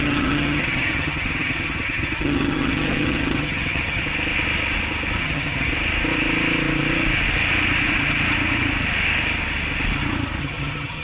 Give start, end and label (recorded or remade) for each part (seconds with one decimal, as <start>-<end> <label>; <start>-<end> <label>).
0.0-4.0 remade; 4.0-5.2 recorded; 5.2-5.7 remade; 5.7-10.4 recorded; 10.4-11.0 remade